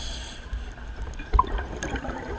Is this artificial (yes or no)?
yes